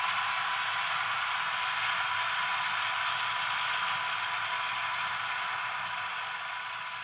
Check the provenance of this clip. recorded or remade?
recorded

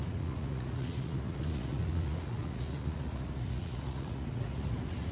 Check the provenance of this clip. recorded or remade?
remade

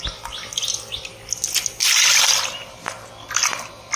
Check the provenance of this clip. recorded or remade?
recorded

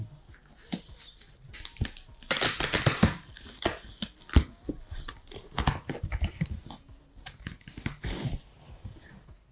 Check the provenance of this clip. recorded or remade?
recorded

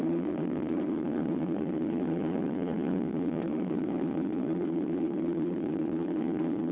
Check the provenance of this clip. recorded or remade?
remade